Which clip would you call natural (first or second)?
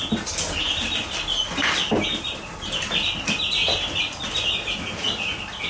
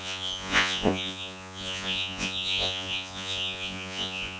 first